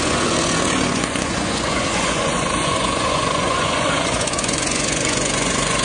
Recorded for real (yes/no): no